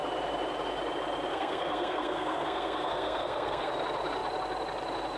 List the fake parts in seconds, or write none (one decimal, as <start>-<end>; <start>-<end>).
1.3-3.7